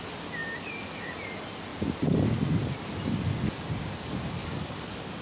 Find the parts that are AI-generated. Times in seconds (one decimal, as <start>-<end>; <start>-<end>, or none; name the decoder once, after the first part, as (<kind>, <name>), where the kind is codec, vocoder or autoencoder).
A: 4.4-5.2 (codec, DAC)